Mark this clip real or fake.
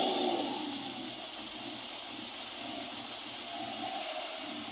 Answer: real